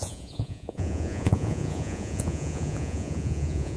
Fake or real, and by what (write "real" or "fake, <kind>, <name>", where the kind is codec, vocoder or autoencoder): fake, vocoder, Vocos